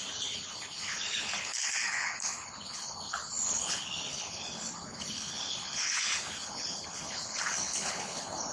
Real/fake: fake